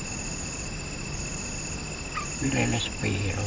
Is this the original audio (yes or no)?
yes